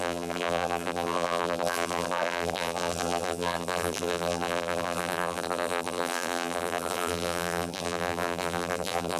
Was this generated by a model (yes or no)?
yes